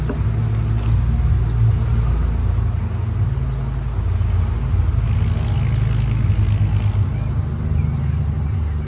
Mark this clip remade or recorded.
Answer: recorded